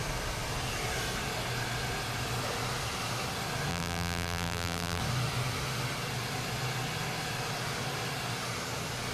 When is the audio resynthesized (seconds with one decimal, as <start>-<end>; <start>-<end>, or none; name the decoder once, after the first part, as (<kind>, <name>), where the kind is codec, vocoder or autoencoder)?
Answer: 3.7-5.0 (vocoder, BigVGAN v2)